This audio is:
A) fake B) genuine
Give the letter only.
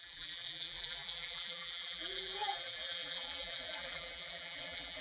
A